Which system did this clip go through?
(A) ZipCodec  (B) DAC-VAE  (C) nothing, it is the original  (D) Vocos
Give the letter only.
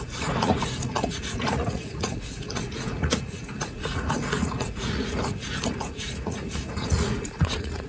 D